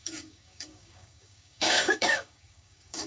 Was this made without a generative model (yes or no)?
no